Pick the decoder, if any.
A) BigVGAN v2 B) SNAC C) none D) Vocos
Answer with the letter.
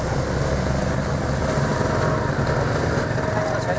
C